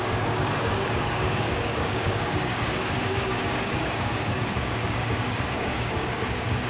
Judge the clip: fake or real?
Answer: fake